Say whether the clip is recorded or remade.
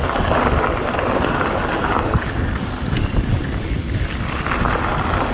recorded